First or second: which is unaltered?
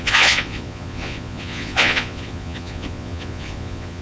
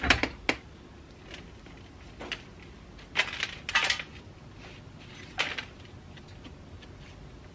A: second